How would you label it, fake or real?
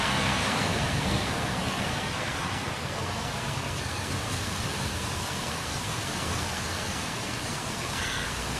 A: fake